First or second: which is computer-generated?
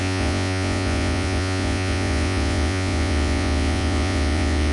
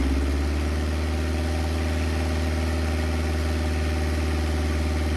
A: first